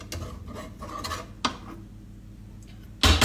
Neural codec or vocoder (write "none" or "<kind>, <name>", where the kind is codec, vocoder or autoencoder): none